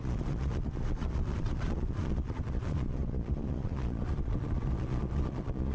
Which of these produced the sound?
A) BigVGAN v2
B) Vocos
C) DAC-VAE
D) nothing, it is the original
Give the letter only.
B